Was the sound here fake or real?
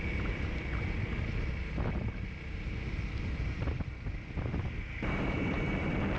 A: real